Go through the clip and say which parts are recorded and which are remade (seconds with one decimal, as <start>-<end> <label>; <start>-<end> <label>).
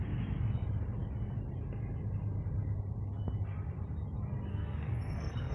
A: 0.0-4.5 recorded; 4.5-5.5 remade